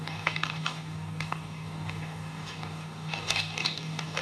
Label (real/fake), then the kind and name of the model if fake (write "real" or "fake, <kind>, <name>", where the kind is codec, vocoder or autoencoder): fake, codec, DAC